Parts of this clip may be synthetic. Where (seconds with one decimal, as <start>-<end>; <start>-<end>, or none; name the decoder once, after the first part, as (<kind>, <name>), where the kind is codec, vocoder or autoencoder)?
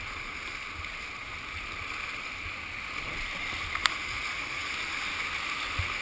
4.1-4.7 (vocoder, Vocos)